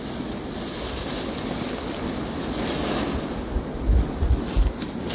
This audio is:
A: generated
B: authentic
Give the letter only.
B